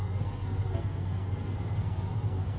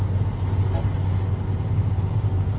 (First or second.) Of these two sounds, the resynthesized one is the first